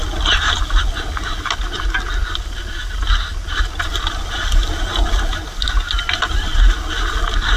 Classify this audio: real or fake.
real